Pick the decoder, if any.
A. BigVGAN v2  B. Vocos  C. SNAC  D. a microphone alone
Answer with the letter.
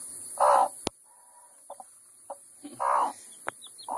D